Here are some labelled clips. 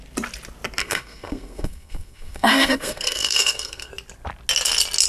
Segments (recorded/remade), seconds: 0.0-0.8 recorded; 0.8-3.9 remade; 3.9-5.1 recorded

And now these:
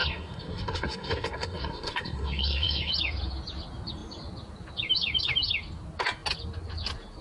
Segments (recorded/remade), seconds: 0.0-2.9 remade; 2.9-7.2 recorded

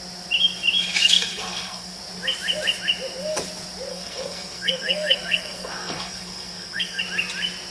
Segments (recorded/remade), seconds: 0.0-1.0 recorded; 1.0-2.0 remade; 2.0-3.9 recorded; 3.9-7.0 remade; 7.0-7.7 recorded

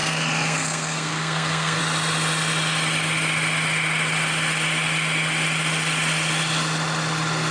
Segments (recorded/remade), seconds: 0.0-1.8 remade; 1.8-7.5 recorded